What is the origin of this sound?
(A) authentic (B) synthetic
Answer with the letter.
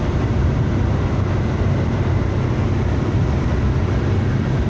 A